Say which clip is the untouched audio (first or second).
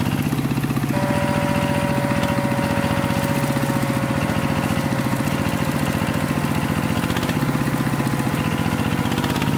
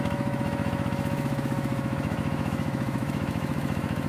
first